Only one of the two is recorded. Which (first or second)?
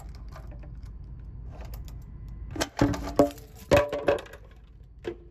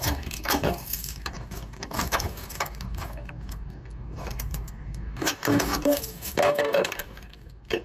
first